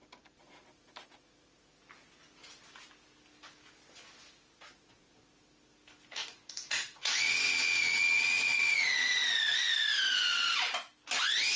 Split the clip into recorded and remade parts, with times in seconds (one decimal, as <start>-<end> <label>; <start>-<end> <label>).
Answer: 0.0-6.2 recorded; 6.2-7.2 remade; 7.2-8.5 recorded; 8.5-9.4 remade; 9.4-11.6 recorded